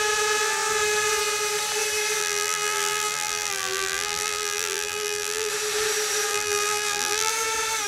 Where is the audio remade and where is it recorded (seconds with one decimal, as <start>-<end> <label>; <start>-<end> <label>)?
0.0-2.2 recorded; 2.2-5.5 remade; 5.5-6.3 recorded; 6.3-7.3 remade; 7.3-7.9 recorded